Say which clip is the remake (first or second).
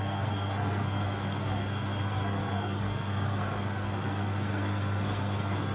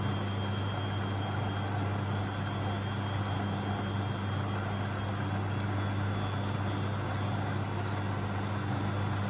first